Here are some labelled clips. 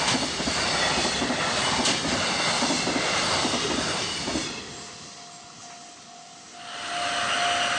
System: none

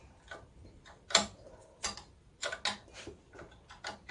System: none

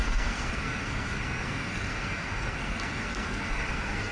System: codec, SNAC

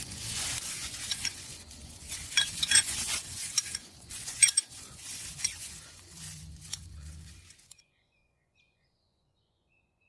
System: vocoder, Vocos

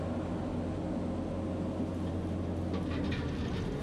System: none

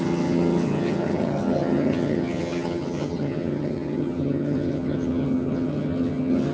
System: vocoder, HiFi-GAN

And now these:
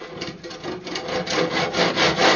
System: none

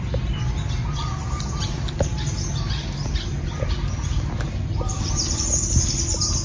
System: none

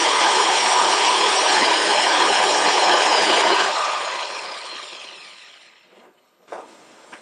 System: codec, HILCodec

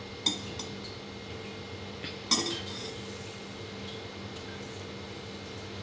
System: none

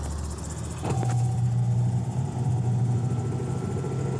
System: none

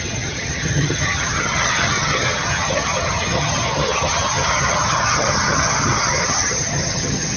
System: vocoder, HiFi-GAN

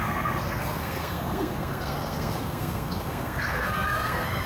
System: codec, SNAC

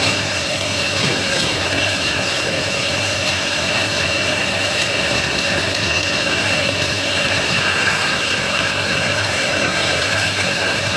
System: codec, SNAC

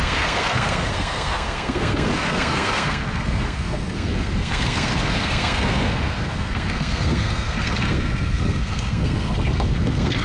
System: codec, SNAC